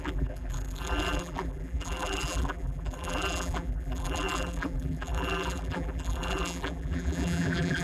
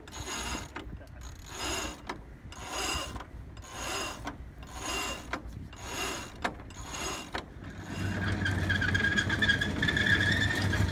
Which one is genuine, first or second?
second